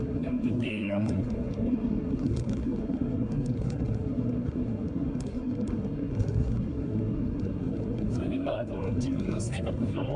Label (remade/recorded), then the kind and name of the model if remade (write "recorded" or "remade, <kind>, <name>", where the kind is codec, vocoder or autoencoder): remade, codec, SNAC